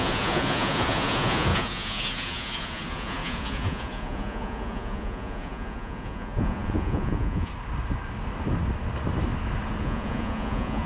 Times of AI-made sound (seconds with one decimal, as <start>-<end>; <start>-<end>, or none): 0.0-7.5; 9.8-10.9

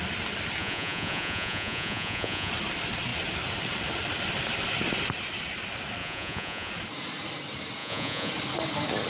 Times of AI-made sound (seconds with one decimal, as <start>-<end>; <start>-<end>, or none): 0.6-2.5; 6.0-6.7; 7.8-8.3

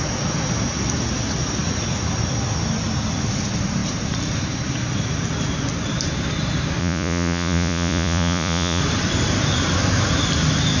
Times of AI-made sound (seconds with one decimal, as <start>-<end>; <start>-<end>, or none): 6.8-8.8

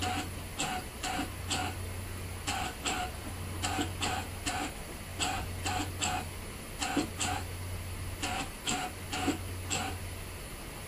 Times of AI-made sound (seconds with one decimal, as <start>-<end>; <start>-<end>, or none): 2.5-3.3; 5.1-5.8

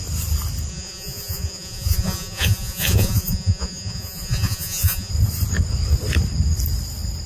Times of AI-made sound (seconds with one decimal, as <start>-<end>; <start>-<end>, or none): 0.7-5.1

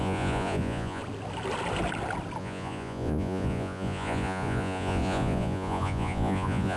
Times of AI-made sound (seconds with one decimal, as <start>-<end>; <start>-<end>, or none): 0.0-1.0; 2.4-6.8